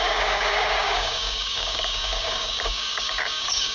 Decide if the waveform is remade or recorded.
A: remade